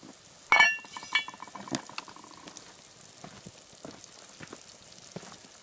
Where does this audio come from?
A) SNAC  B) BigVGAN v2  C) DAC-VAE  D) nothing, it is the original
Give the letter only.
D